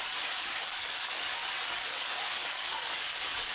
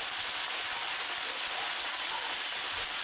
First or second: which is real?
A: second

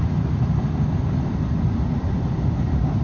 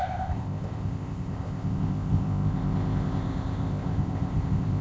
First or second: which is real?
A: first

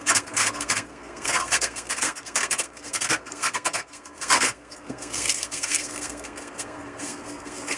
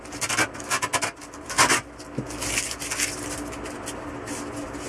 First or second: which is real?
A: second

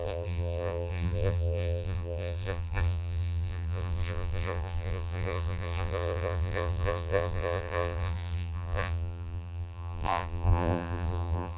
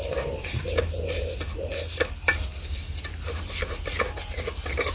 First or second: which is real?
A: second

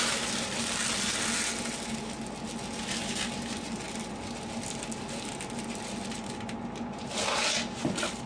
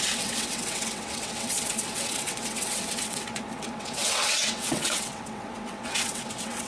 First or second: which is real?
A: first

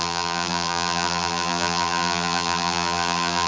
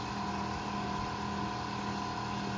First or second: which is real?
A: second